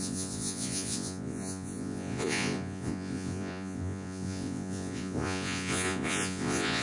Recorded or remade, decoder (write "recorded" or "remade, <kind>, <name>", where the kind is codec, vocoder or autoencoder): remade, vocoder, Vocos